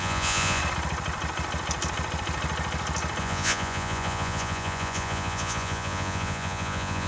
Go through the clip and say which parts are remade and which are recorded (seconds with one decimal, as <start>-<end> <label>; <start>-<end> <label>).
0.0-0.6 remade; 0.6-3.2 recorded; 3.2-7.1 remade